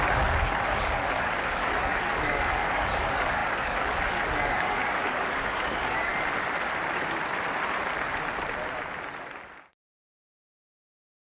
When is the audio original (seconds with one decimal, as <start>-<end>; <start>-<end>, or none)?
6.1-10.5

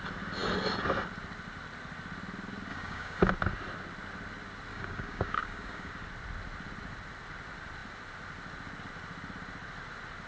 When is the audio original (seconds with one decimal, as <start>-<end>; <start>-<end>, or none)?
0.0-2.7; 3.3-4.7; 5.9-10.3